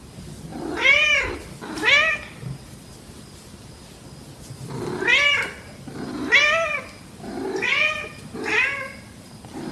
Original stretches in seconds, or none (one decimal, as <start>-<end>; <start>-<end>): 0.0-9.7